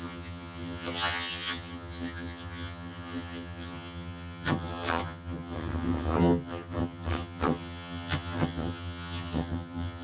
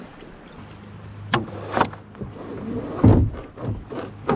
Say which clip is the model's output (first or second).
first